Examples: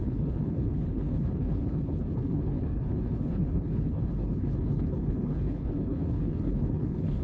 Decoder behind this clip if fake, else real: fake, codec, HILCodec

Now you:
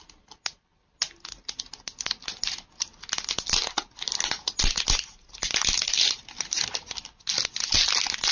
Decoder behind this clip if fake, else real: real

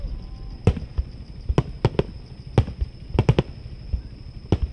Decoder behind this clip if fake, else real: real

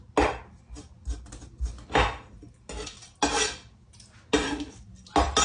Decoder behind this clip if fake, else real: real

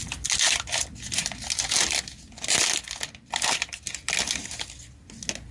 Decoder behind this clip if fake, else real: real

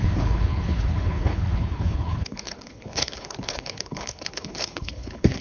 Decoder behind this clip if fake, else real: fake, codec, HILCodec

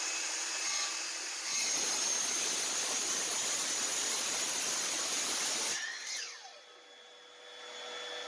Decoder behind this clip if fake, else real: real